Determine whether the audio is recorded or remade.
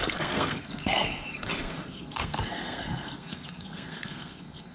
remade